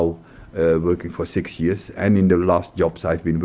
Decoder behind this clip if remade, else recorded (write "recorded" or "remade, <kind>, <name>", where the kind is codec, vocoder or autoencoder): recorded